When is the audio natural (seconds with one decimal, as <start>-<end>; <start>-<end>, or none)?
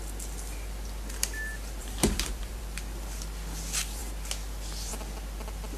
0.0-1.8; 2.6-5.8